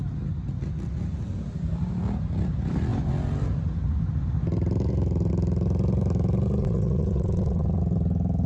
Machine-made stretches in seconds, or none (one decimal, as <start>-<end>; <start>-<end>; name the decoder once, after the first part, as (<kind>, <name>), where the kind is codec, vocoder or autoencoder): 6.6-7.8 (vocoder, WaveNeXt)